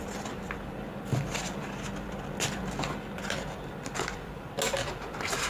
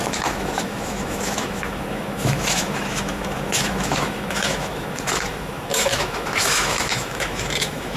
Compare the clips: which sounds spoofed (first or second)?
second